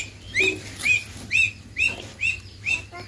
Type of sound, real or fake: real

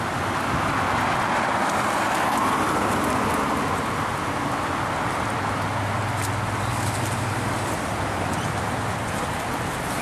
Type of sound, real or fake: real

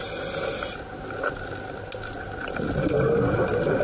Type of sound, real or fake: real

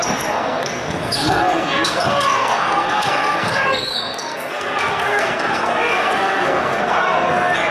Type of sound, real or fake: fake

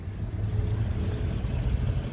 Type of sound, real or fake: real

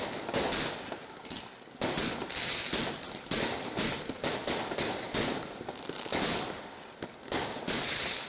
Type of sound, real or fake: real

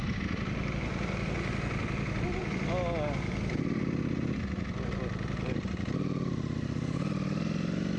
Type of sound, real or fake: real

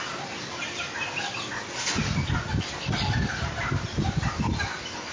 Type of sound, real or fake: real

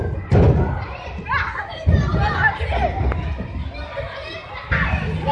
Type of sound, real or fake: real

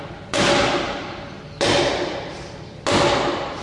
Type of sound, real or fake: real